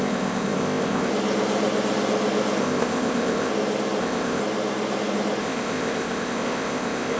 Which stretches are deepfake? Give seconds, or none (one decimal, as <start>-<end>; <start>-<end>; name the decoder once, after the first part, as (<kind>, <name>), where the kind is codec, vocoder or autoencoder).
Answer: 0.0-1.1 (codec, ZipCodec); 2.6-3.5; 4.0-4.4; 5.4-7.2